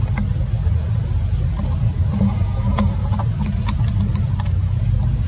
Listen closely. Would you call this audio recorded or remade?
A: recorded